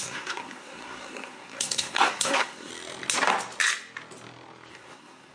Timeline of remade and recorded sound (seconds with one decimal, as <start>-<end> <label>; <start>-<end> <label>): 0.0-2.7 remade; 2.7-4.7 recorded; 4.7-5.3 remade